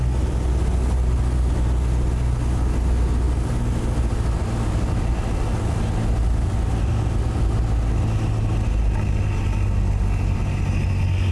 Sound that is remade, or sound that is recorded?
recorded